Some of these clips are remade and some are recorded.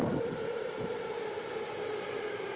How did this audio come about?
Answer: recorded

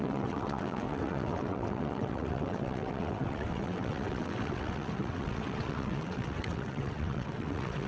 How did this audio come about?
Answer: remade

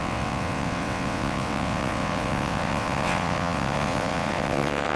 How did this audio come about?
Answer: remade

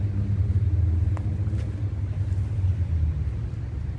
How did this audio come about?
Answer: recorded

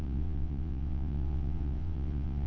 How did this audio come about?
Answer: remade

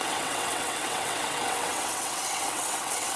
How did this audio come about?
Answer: remade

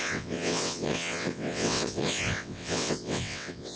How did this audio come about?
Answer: remade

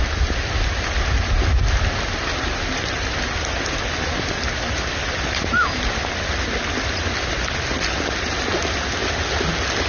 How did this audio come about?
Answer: recorded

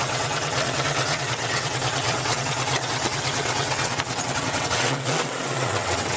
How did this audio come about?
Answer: remade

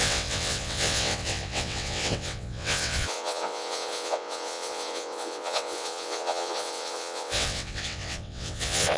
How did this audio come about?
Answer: remade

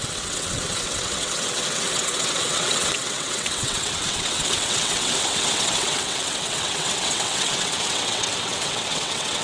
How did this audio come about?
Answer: remade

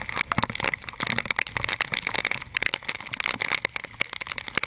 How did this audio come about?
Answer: recorded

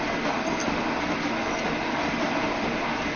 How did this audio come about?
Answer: recorded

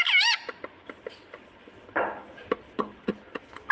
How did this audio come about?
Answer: recorded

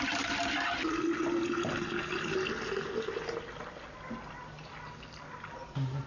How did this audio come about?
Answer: recorded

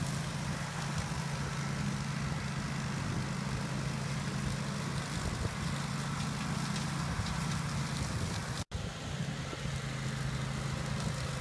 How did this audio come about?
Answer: recorded